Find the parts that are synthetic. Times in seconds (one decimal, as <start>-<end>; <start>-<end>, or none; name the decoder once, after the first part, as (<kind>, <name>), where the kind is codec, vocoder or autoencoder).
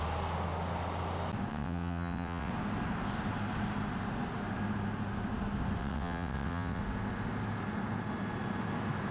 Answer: 1.5-2.5 (vocoder, WaveNeXt); 5.8-6.8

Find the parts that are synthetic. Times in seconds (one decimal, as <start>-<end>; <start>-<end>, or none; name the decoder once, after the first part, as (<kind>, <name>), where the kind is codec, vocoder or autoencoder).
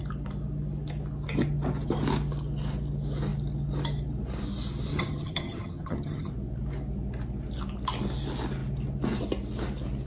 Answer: 4.9-6.3 (vocoder, HiFi-GAN)